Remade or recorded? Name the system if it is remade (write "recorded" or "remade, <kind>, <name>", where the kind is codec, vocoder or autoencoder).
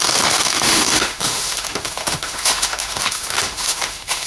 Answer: remade, autoencoder, DAC-VAE